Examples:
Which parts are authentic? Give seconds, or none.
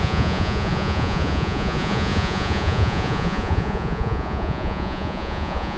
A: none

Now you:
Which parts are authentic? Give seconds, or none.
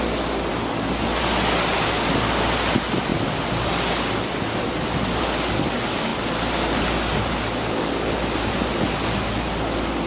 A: 0.0-10.1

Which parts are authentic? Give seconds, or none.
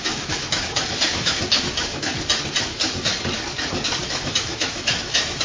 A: 2.1-2.6; 3.1-4.1